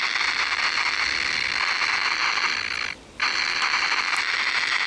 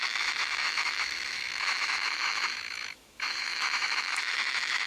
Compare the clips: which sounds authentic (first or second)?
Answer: first